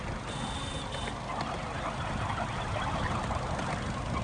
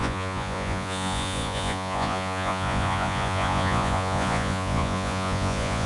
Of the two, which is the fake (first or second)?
second